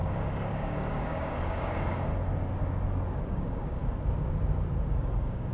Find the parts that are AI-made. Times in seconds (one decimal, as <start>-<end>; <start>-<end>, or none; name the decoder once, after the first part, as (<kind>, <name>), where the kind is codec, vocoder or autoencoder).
0.0-2.1 (codec, DAC); 3.3-3.8; 4.9-5.5